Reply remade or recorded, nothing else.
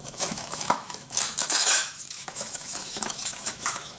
remade